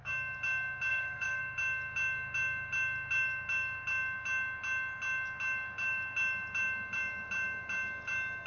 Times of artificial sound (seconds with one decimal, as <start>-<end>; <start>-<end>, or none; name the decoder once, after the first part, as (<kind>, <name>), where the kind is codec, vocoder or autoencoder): 0.9-1.4 (codec, DAC)